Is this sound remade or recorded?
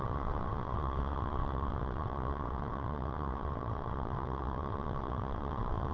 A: remade